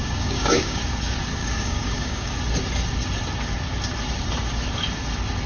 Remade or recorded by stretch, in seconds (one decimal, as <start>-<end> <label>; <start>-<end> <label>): 0.0-0.8 remade; 0.8-1.4 recorded; 1.4-2.3 remade; 2.3-5.5 recorded